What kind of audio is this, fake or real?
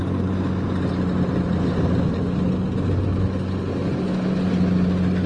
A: real